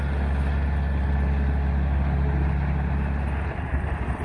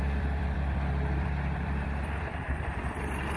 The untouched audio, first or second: first